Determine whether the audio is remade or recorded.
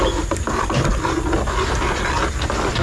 recorded